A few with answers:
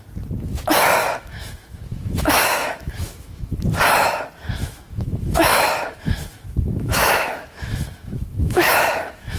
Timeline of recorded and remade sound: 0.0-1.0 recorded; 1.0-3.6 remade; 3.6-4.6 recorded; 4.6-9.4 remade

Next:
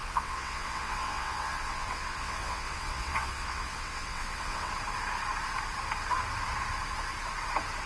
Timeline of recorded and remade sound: 0.0-4.7 remade; 4.7-7.9 recorded

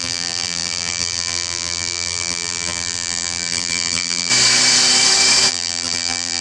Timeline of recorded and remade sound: 0.0-4.3 remade; 4.3-5.5 recorded; 5.5-6.4 remade

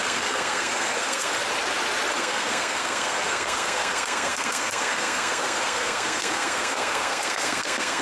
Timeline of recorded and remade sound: 0.0-1.3 remade; 1.3-2.2 recorded; 2.2-8.0 remade